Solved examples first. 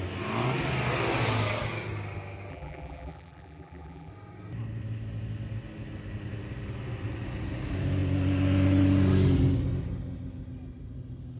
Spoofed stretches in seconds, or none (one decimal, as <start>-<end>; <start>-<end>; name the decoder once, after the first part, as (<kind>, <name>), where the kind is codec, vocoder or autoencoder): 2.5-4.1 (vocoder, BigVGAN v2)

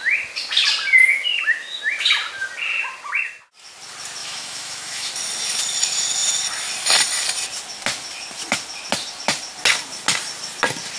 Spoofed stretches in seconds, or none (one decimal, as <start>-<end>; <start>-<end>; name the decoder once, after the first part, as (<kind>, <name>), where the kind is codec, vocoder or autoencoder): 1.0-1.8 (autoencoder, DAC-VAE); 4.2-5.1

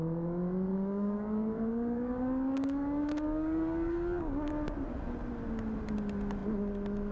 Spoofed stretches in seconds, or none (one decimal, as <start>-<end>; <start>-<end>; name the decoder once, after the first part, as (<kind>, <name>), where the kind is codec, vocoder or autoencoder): 0.7-4.5 (codec, DAC)

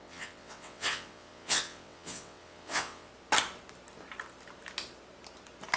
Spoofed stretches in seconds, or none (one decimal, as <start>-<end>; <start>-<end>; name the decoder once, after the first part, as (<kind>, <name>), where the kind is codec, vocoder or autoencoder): 0.0-3.1 (vocoder, WaveNeXt)

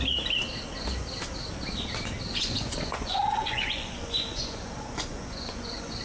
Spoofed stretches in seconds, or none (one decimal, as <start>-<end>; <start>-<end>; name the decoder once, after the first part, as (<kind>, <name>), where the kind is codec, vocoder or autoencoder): 2.3-6.0 (vocoder, Vocos)

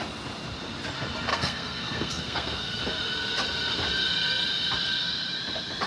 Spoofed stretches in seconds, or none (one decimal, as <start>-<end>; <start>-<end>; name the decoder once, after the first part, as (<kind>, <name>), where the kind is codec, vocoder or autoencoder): 1.3-2.8 (codec, SNAC)

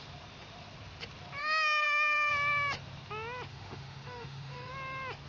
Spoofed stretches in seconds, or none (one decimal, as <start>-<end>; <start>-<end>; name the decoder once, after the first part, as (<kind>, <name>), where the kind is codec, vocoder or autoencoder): 1.4-2.3 (autoencoder, DAC-VAE); 3.5-4.7